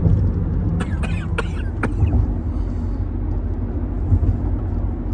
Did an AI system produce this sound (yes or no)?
no